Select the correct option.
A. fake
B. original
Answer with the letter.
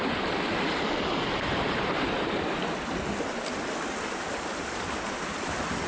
B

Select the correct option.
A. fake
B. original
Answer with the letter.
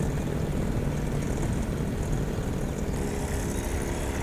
B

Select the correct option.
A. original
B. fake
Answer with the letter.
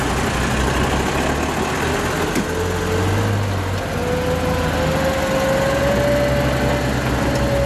A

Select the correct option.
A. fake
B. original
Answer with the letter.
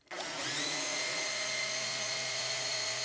A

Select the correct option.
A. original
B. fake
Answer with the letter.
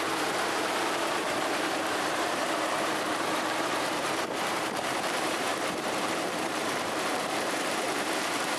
B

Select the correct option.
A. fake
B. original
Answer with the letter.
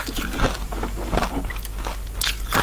B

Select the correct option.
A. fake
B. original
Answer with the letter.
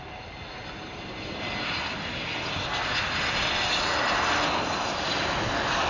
B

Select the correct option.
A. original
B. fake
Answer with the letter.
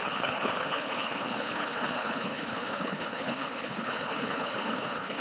B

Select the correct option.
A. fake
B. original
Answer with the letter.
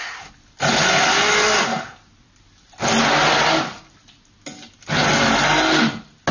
B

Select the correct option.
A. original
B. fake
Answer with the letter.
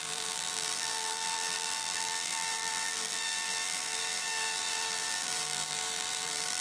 B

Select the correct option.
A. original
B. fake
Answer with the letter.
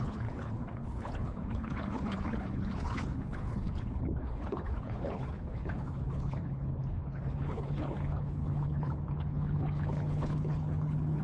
B